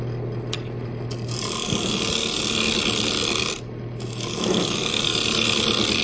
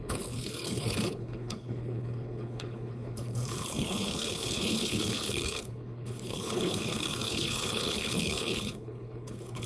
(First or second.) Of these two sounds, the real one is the first